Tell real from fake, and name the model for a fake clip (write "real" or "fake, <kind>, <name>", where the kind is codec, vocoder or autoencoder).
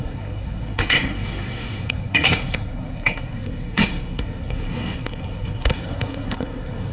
fake, codec, SNAC